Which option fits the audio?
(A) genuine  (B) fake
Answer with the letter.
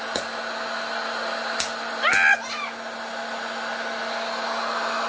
A